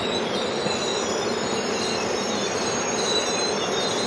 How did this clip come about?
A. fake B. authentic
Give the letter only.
B